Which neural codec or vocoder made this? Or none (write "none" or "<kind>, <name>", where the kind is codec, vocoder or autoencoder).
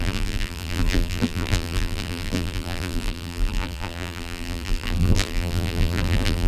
vocoder, BigVGAN v2